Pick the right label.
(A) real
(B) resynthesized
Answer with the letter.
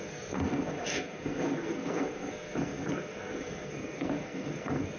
B